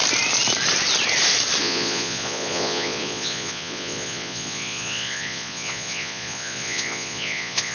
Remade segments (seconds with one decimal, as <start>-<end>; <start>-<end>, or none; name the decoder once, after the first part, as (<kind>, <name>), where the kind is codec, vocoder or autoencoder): 1.6-7.7 (vocoder, Vocos)